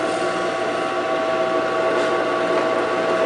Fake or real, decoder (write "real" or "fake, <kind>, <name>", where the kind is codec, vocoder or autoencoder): real